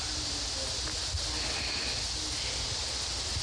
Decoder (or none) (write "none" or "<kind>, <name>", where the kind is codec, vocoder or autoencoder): none